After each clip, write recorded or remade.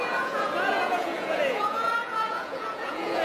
remade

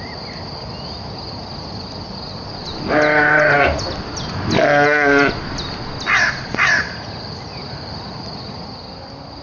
recorded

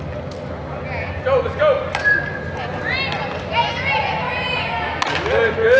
recorded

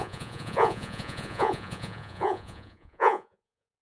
remade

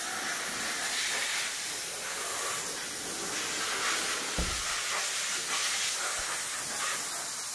recorded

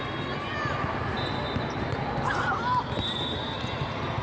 recorded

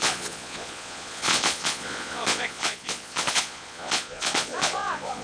remade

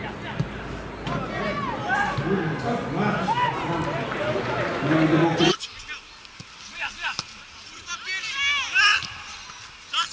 recorded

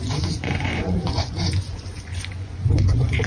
remade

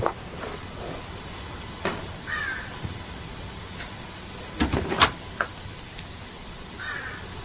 recorded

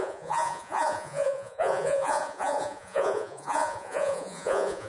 remade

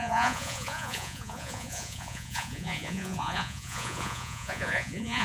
remade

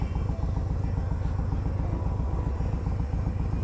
recorded